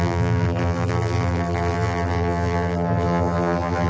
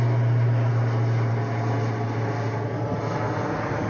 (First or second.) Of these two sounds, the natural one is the second